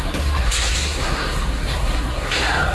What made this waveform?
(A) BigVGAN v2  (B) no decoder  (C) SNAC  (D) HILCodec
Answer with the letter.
C